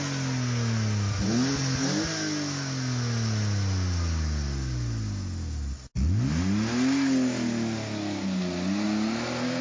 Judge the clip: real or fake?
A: real